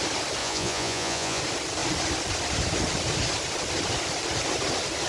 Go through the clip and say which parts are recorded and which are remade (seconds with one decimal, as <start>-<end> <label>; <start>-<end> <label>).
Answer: 0.0-0.4 recorded; 0.4-1.4 remade; 1.4-5.1 recorded